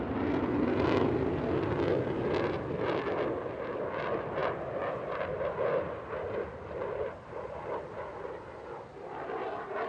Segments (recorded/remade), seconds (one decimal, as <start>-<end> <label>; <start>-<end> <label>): 0.0-9.9 recorded